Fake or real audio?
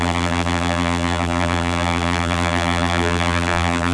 fake